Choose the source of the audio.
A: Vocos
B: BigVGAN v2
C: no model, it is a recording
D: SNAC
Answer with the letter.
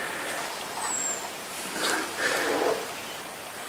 B